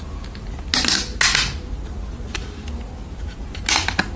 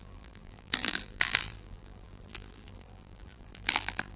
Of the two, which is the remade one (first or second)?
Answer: second